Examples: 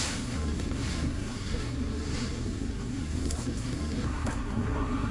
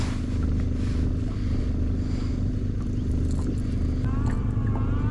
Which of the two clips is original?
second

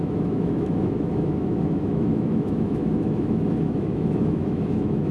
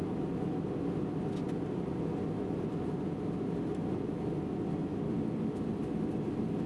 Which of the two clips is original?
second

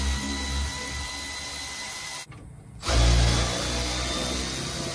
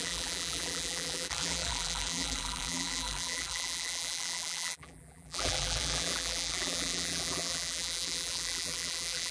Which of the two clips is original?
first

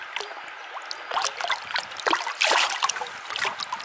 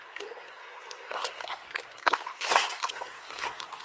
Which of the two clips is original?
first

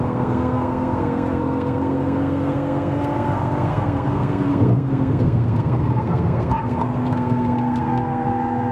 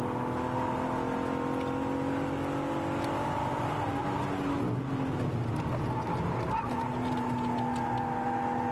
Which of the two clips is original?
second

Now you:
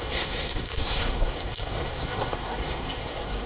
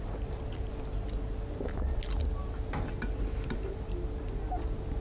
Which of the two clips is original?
second